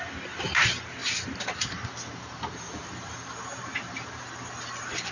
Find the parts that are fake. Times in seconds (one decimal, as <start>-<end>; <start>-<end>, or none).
1.0-1.7; 2.1-4.2